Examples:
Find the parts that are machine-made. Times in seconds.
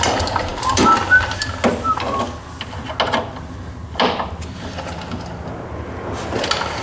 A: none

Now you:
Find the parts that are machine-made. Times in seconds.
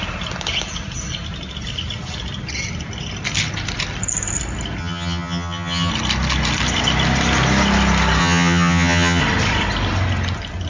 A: 4.8-5.9 (vocoder, HiFi-GAN); 8.2-9.2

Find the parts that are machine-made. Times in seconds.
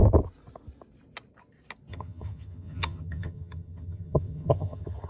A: 1.9-5.1 (vocoder, HiFi-GAN)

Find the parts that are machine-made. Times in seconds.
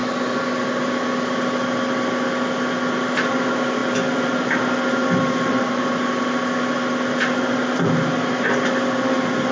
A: none